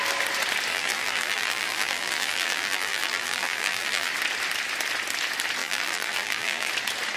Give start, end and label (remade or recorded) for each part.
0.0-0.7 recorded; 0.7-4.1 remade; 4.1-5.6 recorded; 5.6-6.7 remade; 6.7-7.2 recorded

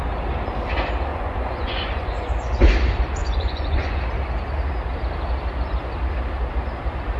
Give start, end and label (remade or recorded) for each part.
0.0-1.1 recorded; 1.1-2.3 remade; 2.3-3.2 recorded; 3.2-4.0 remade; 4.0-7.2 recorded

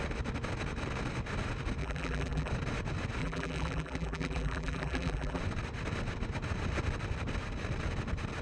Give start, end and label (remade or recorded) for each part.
0.0-1.8 recorded; 1.8-2.5 remade; 2.5-3.2 recorded; 3.2-5.4 remade; 5.4-8.4 recorded

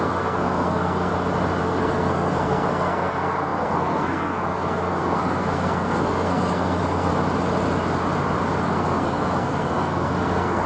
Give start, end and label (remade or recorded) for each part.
0.0-1.1 remade; 1.1-1.6 recorded; 1.6-7.1 remade; 7.1-8.6 recorded; 8.6-10.7 remade